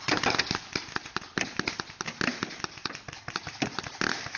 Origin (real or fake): real